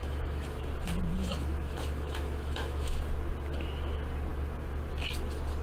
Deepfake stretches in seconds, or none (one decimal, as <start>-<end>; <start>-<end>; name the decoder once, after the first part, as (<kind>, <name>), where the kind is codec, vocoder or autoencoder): 0.0-0.7 (autoencoder, DAC-VAE); 1.2-3.0